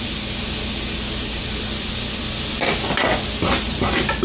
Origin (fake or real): real